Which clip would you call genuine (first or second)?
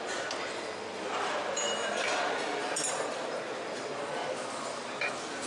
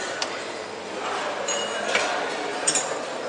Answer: first